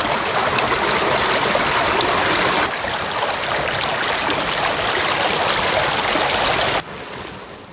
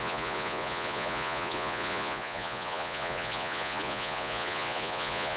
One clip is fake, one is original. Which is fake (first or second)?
second